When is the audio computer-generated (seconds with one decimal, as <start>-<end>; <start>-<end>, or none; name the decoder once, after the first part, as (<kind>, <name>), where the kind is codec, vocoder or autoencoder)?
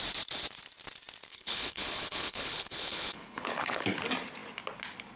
1.3-4.0 (codec, HILCodec)